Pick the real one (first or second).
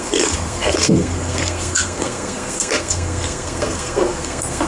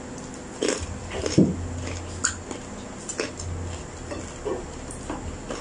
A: second